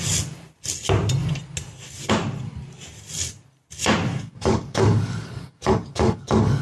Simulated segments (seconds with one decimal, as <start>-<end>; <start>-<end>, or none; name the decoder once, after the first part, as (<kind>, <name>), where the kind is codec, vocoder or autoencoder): 4.1-6.6 (codec, DAC)